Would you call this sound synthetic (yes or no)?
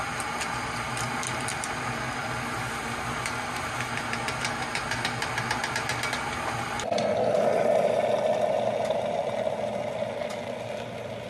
no